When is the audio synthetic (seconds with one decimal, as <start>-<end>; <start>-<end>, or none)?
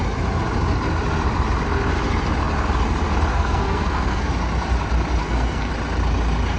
3.3-4.3; 5.2-5.7